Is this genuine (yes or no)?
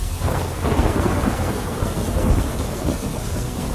no